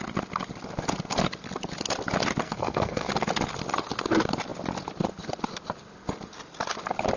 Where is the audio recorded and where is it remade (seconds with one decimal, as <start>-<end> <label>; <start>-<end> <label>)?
0.0-2.4 recorded; 2.4-3.1 remade; 3.1-7.2 recorded

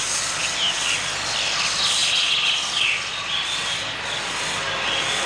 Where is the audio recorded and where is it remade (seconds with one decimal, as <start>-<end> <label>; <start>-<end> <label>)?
0.0-5.3 recorded

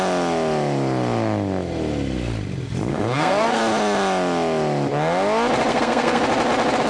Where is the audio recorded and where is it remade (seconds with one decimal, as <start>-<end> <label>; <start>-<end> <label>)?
0.0-2.9 recorded; 2.9-3.6 remade; 3.6-5.7 recorded; 5.7-6.2 remade; 6.2-6.9 recorded

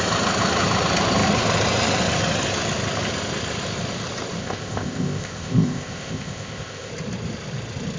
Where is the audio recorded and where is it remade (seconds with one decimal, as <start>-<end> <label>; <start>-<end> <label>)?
0.0-4.4 recorded; 4.4-6.9 remade; 6.9-8.0 recorded

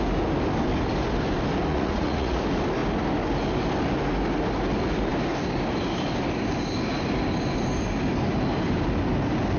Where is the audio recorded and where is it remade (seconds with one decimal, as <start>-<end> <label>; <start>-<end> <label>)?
0.0-1.7 recorded; 1.7-2.4 remade; 2.4-9.6 recorded

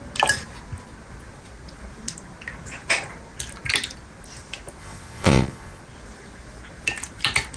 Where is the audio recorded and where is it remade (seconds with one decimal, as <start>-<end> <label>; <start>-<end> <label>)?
0.0-4.8 recorded; 4.8-5.8 remade; 5.8-7.6 recorded